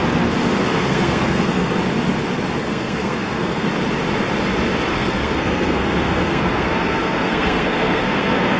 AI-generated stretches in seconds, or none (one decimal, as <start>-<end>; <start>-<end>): 0.6-1.8; 2.6-3.7; 4.9-8.6